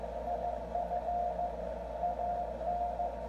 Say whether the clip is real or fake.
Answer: real